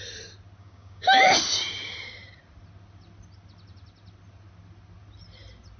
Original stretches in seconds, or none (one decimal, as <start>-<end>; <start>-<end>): 0.0-0.6; 1.2-5.8

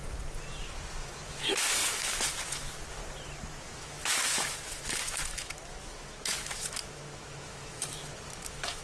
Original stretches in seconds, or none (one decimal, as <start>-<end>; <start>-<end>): 0.0-0.6; 3.0-3.6

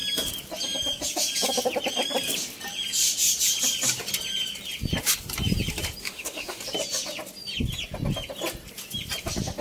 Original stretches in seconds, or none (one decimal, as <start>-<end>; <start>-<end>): 0.0-6.0; 6.6-9.6

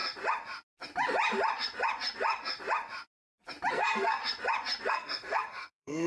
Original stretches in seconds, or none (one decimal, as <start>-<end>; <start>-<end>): 0.0-3.7; 4.2-4.9

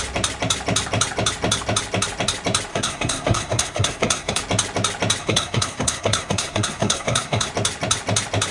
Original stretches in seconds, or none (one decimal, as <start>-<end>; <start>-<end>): 0.0-2.7; 4.4-5.2; 7.5-8.5

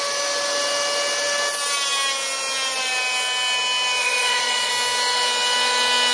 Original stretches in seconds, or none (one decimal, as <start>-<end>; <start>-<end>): 0.0-4.0; 4.7-6.1

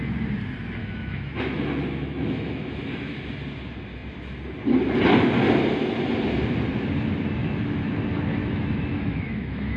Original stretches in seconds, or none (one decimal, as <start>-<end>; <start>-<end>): 0.0-0.8; 3.3-7.4; 8.0-8.4